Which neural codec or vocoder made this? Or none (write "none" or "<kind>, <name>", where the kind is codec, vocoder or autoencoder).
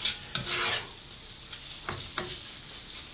none